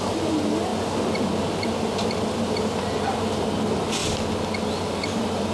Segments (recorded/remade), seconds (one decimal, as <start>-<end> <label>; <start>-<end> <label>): 0.0-4.0 remade; 4.0-4.7 recorded; 4.7-5.5 remade